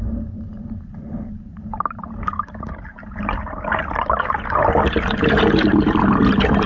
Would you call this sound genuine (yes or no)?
no